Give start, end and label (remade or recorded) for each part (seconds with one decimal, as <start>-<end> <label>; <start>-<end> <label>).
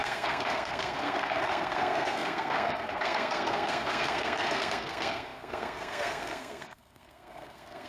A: 0.0-7.9 remade